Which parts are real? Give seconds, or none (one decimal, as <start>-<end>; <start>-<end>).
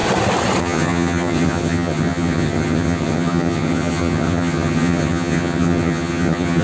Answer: 0.0-0.6